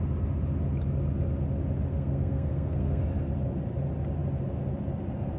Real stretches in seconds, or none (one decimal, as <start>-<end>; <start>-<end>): 0.0-1.9; 3.0-5.4